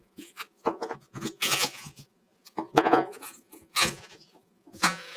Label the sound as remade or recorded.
remade